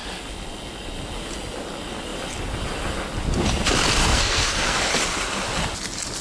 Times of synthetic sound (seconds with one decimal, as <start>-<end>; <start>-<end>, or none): 4.0-4.8

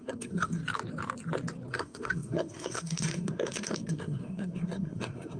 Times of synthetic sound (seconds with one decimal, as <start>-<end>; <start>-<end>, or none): 0.0-0.6; 1.7-5.4

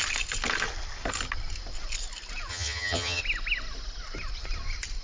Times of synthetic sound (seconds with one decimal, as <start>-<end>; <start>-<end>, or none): 2.5-3.2

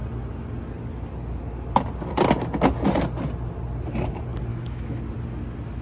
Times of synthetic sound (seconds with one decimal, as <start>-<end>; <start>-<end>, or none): 4.5-5.0

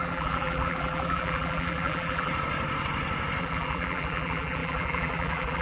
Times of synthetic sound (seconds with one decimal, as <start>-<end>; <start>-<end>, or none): 0.0-2.3; 3.4-5.6

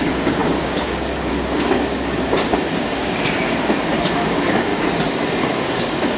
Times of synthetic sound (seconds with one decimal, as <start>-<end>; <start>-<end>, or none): 0.0-4.7; 5.4-6.2